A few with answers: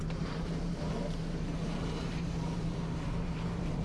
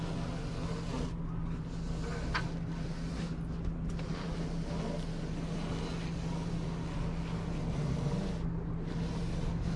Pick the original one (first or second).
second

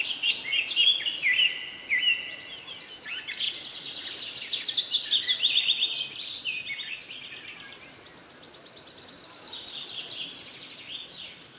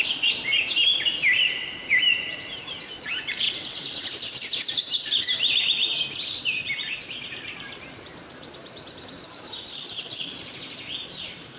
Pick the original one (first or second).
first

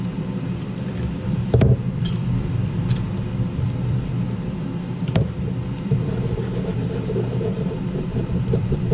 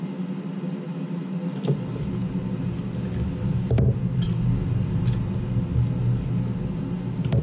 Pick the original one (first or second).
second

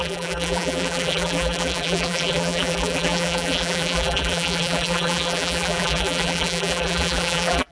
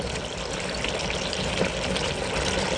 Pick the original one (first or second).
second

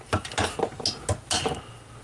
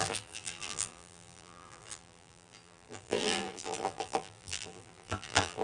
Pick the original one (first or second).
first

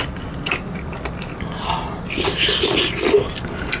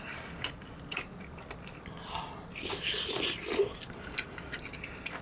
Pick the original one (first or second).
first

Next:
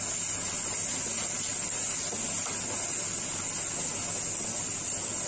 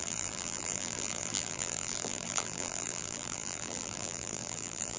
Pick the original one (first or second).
first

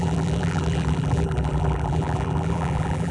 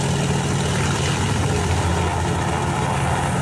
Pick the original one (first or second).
second